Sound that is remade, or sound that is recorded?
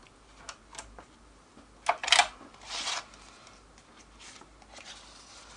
recorded